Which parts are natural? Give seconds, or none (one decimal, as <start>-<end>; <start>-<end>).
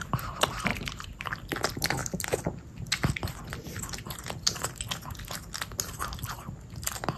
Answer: 0.0-0.7; 1.3-7.2